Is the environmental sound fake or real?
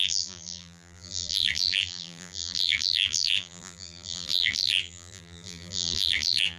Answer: fake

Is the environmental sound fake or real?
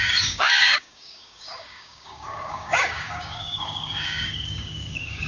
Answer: fake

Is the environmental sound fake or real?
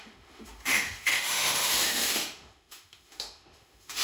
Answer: fake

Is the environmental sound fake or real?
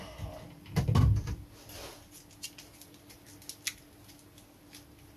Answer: real